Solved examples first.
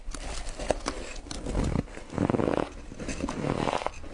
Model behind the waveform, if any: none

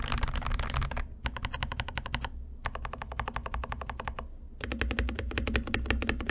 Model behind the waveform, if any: none